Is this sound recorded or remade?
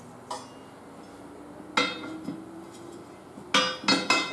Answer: recorded